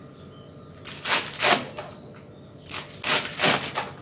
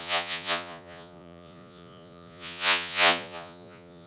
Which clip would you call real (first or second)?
first